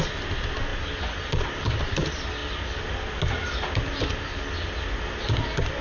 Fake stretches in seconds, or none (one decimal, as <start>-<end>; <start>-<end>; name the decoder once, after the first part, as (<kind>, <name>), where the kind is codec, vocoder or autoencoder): none